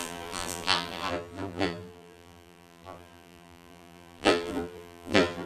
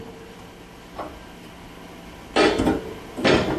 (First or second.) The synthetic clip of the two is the first